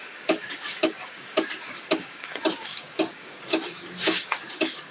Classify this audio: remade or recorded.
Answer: remade